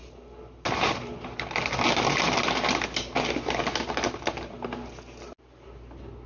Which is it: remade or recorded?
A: recorded